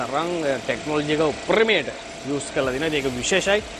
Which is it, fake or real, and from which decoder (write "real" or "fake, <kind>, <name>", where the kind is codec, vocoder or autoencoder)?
real